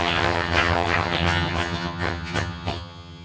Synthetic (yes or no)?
yes